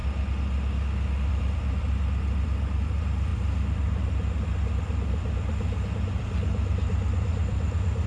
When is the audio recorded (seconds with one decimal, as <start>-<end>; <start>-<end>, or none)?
0.0-1.3